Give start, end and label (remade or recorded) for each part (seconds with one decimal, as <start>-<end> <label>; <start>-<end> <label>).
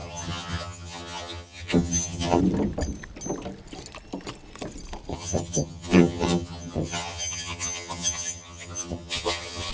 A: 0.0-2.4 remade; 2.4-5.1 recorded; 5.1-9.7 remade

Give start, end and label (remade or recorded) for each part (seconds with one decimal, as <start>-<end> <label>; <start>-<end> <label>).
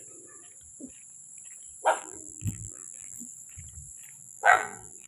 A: 0.0-2.0 recorded; 2.0-3.3 remade; 3.3-4.2 recorded; 4.2-5.1 remade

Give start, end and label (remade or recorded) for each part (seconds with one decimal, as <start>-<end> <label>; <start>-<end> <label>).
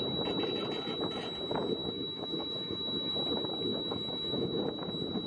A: 0.0-1.8 recorded; 1.8-3.1 remade; 3.1-3.7 recorded; 3.7-4.6 remade; 4.6-5.3 recorded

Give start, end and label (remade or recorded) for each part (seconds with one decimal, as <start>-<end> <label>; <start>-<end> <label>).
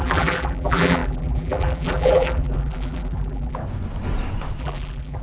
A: 0.0-3.6 remade; 3.6-4.6 recorded; 4.6-5.2 remade